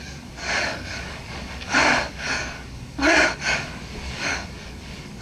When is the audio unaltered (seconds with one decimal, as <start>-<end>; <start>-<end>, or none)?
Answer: none